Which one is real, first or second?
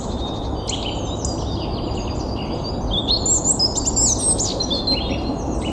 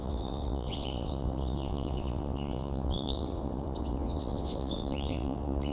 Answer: first